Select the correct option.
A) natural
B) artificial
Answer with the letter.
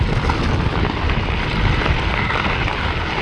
A